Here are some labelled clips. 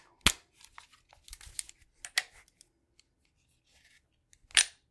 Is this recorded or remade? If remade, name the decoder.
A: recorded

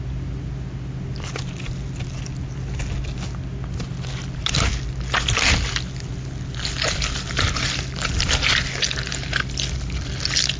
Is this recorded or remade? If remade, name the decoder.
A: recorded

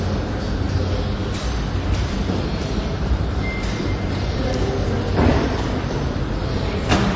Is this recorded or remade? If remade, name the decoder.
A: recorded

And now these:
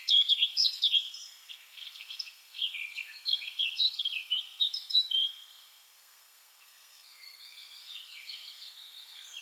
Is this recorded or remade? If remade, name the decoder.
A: remade, codec, SNAC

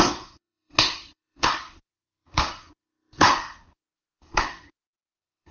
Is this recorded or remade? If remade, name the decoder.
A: remade, codec, SNAC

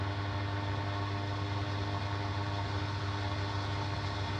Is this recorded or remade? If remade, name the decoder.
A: recorded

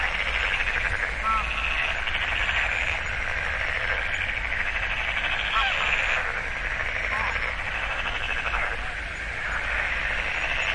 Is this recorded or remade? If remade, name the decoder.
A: recorded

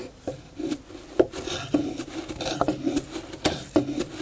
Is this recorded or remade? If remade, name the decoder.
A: recorded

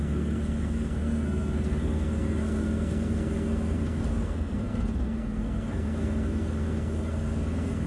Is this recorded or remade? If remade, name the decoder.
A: remade, codec, SNAC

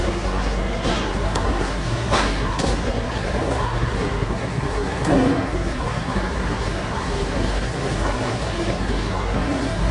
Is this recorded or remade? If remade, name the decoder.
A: remade, codec, SNAC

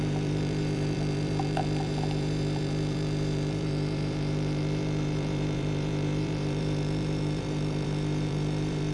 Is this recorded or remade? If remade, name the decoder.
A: remade, vocoder, BigVGAN v2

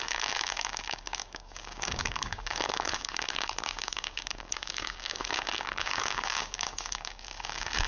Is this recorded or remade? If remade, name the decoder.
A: remade, codec, DAC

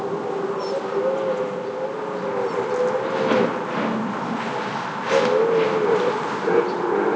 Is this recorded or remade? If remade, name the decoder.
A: recorded